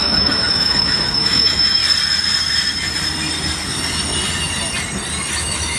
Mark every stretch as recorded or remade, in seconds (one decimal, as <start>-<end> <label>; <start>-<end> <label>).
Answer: 0.0-1.8 remade; 1.8-5.3 recorded; 5.3-5.8 remade